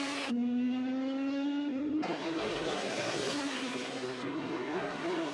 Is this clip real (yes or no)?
no